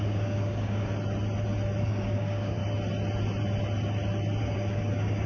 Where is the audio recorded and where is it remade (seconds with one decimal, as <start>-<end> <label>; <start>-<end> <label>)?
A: 0.0-0.9 remade; 0.9-1.8 recorded; 1.8-2.6 remade; 2.6-4.4 recorded; 4.4-5.3 remade